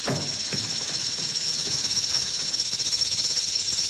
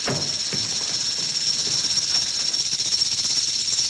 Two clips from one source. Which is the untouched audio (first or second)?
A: second